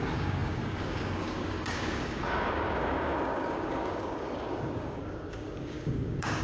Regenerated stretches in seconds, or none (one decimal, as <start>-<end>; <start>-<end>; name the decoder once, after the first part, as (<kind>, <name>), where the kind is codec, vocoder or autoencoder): 0.0-6.4 (codec, DAC)